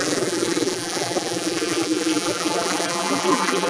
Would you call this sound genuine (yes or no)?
no